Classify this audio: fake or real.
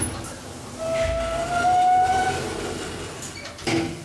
real